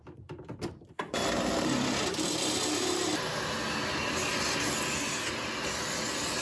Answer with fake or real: real